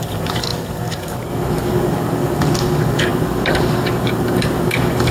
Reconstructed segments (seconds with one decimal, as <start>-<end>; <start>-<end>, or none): 0.0-5.1

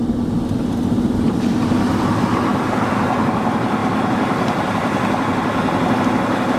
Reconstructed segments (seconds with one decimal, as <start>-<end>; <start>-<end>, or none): 1.6-2.5; 3.8-6.0

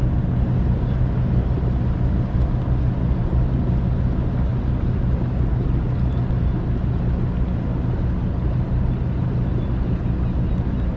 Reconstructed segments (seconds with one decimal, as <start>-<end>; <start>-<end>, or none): none